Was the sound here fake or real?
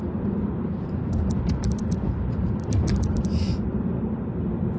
fake